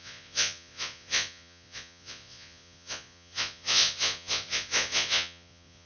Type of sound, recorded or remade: remade